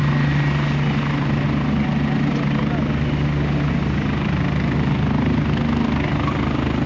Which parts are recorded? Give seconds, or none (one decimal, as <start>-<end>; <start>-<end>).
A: 0.0-6.9